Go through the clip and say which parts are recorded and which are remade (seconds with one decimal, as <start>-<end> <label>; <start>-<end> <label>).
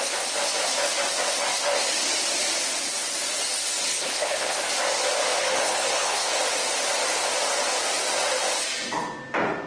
0.0-3.9 recorded; 3.9-4.6 remade; 4.6-5.4 recorded; 5.4-6.4 remade; 6.4-9.7 recorded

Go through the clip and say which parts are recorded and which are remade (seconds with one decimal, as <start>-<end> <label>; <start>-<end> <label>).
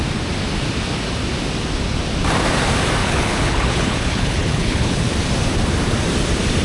0.0-3.0 recorded; 3.0-5.0 remade; 5.0-6.6 recorded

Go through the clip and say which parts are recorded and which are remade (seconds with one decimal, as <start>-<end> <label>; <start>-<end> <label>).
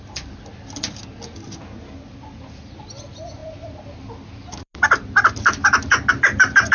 0.0-6.7 recorded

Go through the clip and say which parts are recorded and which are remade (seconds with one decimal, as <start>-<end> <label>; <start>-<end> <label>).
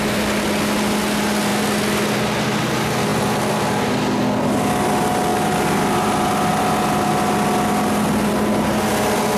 0.0-9.4 recorded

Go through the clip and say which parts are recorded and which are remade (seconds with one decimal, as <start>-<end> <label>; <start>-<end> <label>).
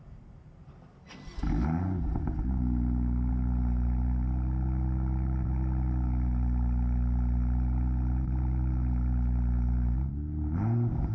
0.0-0.9 remade; 0.9-3.3 recorded; 3.3-11.1 remade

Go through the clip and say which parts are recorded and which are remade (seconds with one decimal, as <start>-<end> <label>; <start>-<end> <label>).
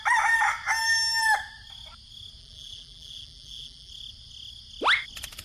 0.0-2.4 recorded; 2.4-3.9 remade; 3.9-5.4 recorded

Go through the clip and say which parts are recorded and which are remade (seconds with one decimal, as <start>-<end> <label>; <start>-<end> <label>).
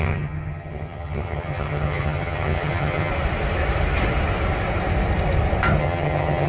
0.0-3.1 remade; 3.1-5.8 recorded; 5.8-6.5 remade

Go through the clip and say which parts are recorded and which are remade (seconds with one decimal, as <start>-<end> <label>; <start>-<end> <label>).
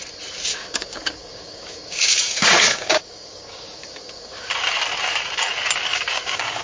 0.0-0.5 recorded; 0.5-4.5 remade; 4.5-5.9 recorded; 5.9-6.6 remade